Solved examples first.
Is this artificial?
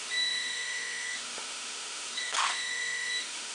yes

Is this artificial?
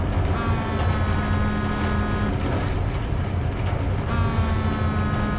no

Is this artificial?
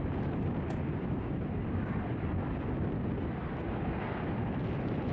no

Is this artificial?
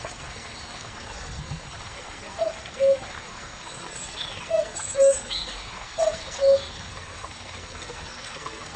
yes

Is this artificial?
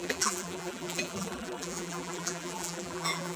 yes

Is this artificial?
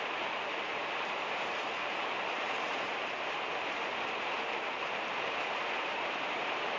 yes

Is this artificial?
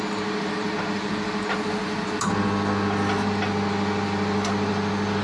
no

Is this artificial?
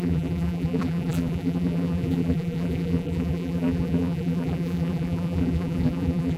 yes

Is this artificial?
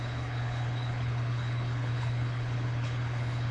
yes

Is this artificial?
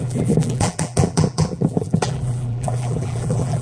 yes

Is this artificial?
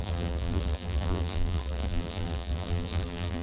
yes